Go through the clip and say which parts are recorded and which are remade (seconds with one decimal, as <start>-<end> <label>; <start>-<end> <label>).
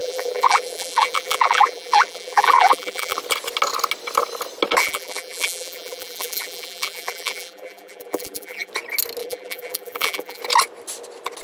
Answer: 0.0-3.2 remade; 3.2-4.8 recorded; 4.8-8.7 remade; 8.7-9.2 recorded; 9.2-10.4 remade; 10.4-11.4 recorded